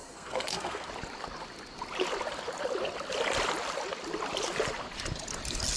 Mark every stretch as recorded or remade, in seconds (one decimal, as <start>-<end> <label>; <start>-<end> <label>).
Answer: 0.0-0.9 remade; 0.9-5.8 recorded

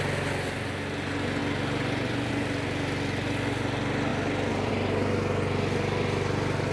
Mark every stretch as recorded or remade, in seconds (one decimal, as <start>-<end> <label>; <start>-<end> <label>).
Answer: 0.0-4.1 recorded; 4.1-4.7 remade; 4.7-6.7 recorded

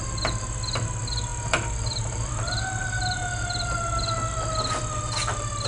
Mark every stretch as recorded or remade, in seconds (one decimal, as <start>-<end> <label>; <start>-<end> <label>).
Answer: 0.0-5.7 recorded